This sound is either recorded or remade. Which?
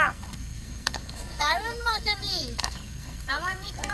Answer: remade